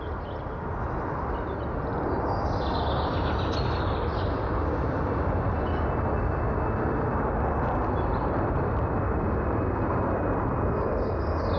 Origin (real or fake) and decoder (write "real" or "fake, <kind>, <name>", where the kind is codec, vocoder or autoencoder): real